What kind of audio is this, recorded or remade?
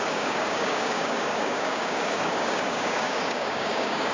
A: remade